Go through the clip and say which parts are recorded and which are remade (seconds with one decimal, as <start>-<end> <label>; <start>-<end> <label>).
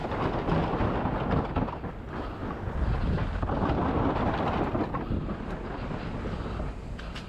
0.0-2.4 recorded; 2.4-6.2 remade; 6.2-7.3 recorded